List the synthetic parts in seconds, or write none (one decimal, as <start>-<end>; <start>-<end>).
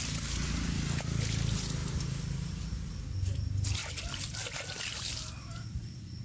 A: none